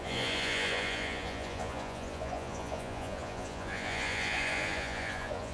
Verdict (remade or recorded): remade